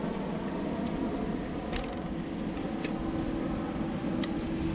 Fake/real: real